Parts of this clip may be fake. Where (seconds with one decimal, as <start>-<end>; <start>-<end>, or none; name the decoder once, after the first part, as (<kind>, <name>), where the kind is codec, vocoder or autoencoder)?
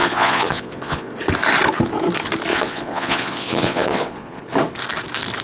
0.0-1.1 (vocoder, Vocos); 2.5-4.4